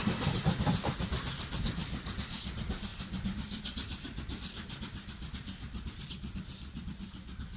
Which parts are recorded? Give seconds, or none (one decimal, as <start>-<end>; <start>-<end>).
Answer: 0.0-7.6